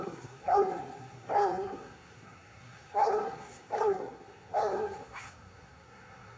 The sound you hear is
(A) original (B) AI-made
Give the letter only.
B